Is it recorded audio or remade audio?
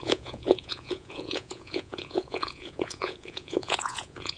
remade